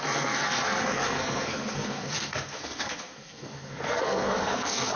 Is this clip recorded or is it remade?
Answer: remade